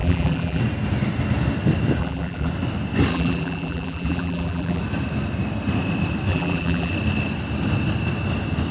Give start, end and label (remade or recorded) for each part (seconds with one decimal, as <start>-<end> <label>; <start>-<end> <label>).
0.0-0.6 remade; 0.6-2.0 recorded; 2.0-2.5 remade; 2.5-3.1 recorded; 3.1-4.8 remade; 4.8-6.3 recorded; 6.3-6.9 remade; 6.9-8.7 recorded

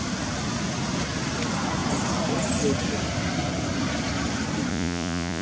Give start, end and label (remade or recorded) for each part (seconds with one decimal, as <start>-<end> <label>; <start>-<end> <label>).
0.0-4.7 recorded; 4.7-5.4 remade

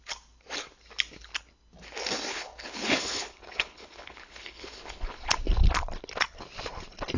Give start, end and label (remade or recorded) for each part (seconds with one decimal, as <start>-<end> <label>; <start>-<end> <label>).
0.0-2.3 recorded; 2.3-5.3 remade; 5.3-7.2 recorded

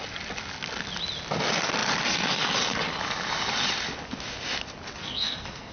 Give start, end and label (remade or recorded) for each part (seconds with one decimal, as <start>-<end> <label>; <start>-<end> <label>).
0.0-5.0 recorded; 5.0-5.7 remade

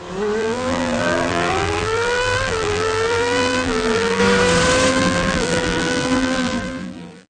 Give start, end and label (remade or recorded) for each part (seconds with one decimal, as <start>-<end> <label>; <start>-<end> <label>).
0.0-0.4 recorded; 0.4-4.2 remade; 4.2-4.9 recorded; 4.9-7.3 remade

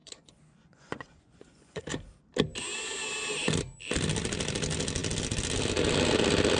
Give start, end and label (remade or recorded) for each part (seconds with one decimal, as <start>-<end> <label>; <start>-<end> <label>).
0.0-1.8 remade; 1.8-6.6 recorded

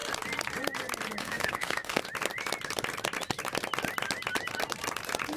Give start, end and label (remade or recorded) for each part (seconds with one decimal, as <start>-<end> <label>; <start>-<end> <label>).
0.0-1.2 recorded; 1.2-2.0 remade; 2.0-5.4 recorded

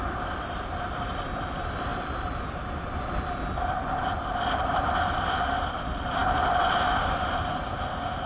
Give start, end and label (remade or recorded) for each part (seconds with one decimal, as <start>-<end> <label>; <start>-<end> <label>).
0.0-8.3 recorded